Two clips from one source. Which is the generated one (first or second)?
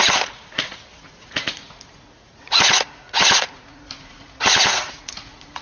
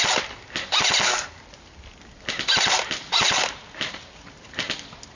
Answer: first